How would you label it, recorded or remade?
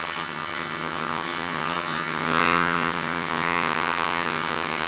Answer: remade